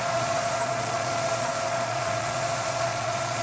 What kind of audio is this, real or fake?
fake